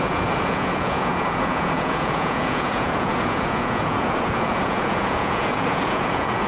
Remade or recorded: remade